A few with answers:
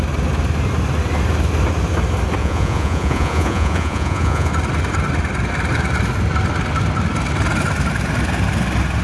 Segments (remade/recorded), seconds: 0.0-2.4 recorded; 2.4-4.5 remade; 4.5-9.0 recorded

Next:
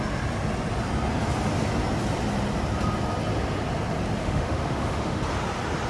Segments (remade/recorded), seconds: 0.0-4.2 recorded; 4.2-5.2 remade; 5.2-5.9 recorded

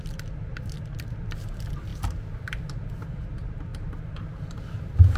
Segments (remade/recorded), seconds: 0.0-1.9 remade; 1.9-2.4 recorded; 2.4-5.2 remade

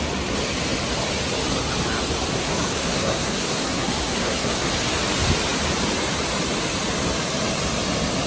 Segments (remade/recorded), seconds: 0.0-2.3 recorded; 2.3-4.7 remade; 4.7-8.3 recorded